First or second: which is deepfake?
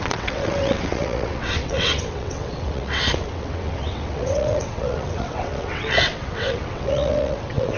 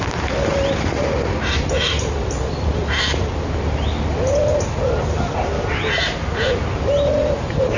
first